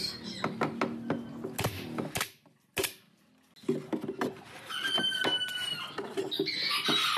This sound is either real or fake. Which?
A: real